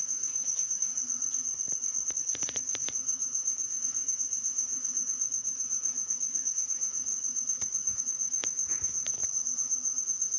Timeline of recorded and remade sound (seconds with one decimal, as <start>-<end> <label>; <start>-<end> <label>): 0.0-0.9 remade; 0.9-2.1 recorded; 2.1-9.2 remade; 9.2-10.0 recorded; 10.0-10.4 remade